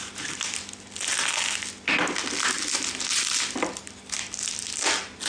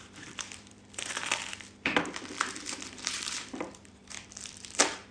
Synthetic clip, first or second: second